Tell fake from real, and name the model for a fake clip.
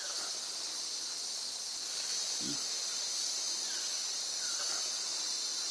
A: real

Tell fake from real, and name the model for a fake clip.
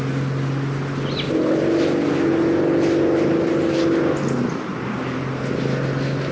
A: real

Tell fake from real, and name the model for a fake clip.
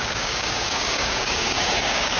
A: fake, codec, DAC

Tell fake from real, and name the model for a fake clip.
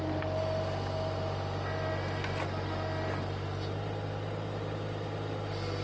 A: real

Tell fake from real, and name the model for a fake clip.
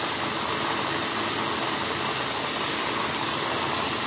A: real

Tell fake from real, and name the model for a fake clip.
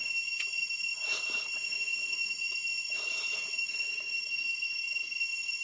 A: real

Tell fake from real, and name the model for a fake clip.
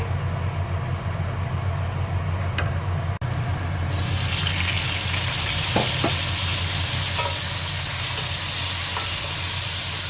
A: real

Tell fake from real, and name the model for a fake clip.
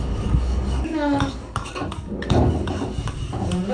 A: fake, codec, DAC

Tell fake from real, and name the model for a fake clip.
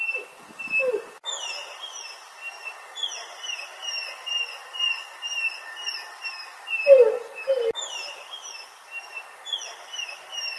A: real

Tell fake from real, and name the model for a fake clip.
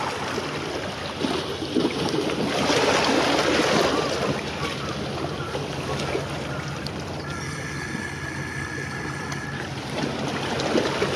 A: real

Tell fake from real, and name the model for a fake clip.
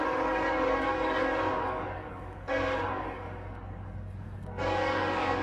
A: fake, codec, DAC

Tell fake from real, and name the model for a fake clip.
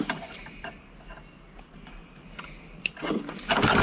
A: real